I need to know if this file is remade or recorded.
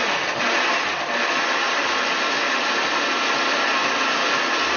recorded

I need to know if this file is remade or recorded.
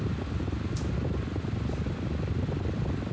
recorded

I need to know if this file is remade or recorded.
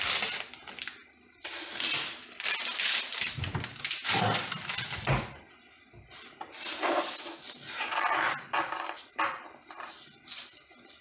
recorded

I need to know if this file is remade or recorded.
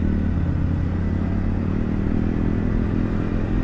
recorded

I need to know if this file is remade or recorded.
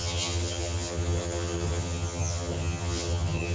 remade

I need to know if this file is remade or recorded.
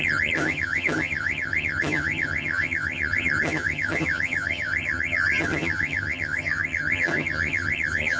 remade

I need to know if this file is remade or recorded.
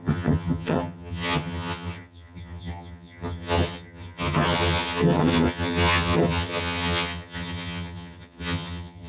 remade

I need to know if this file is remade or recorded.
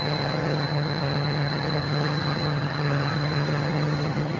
remade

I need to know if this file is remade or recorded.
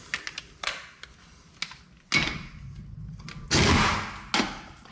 recorded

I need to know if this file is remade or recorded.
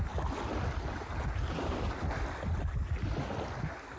recorded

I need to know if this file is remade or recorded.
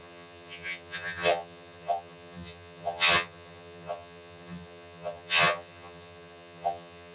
remade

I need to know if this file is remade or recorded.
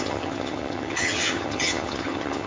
remade